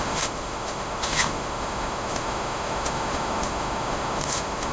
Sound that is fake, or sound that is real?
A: fake